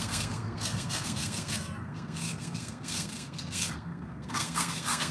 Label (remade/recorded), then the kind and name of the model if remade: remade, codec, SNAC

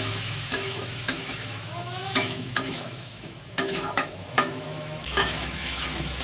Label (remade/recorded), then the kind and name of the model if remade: remade, autoencoder, DAC-VAE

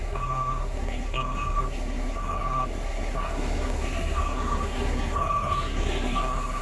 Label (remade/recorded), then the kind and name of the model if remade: remade, codec, SNAC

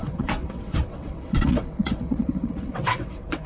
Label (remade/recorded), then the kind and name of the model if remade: remade, vocoder, WaveNeXt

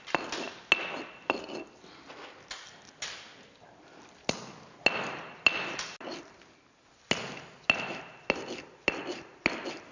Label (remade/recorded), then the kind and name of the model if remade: recorded